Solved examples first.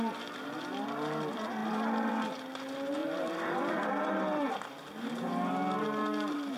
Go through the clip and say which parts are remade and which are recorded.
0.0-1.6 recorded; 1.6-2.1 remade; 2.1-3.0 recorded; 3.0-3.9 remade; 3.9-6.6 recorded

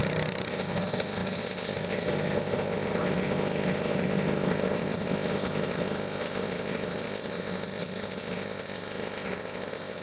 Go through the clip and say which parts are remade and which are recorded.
0.0-0.5 recorded; 0.5-10.0 remade

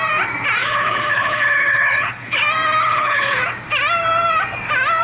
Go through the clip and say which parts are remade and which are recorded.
0.0-0.6 recorded; 0.6-2.4 remade; 2.4-2.8 recorded; 2.8-3.4 remade; 3.4-5.0 recorded